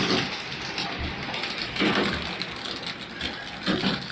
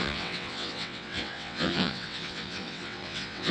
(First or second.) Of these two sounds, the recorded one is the first